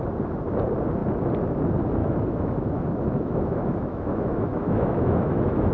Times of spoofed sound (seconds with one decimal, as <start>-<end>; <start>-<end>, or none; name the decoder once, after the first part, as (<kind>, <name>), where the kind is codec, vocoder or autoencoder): 2.0-5.7 (autoencoder, DAC-VAE)